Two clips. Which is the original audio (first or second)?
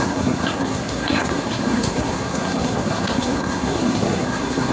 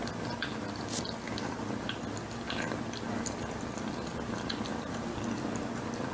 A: second